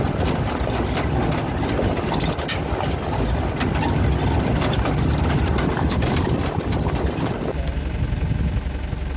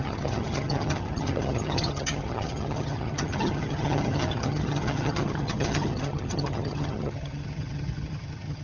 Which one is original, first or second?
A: first